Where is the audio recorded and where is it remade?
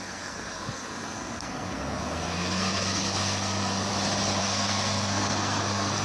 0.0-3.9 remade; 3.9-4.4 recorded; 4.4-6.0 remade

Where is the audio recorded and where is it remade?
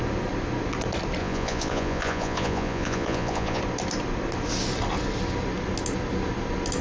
0.0-1.2 recorded; 1.2-3.6 remade; 3.6-6.8 recorded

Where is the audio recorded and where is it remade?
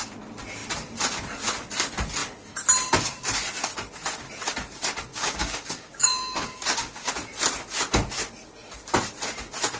0.0-5.1 recorded; 5.1-7.1 remade; 7.1-9.8 recorded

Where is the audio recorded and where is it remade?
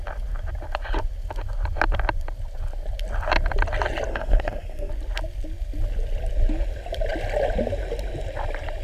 0.0-4.1 recorded; 4.1-4.9 remade; 4.9-8.8 recorded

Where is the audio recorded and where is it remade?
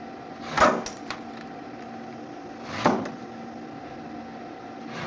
0.0-5.1 recorded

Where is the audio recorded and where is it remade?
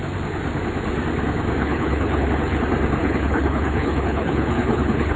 0.0-1.6 recorded; 1.6-2.6 remade; 2.6-3.0 recorded; 3.0-5.2 remade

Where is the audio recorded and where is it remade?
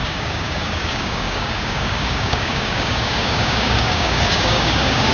0.0-5.1 remade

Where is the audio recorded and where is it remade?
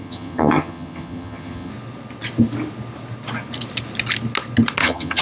0.0-1.7 remade; 1.7-4.8 recorded; 4.8-5.2 remade